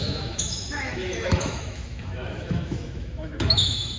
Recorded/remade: remade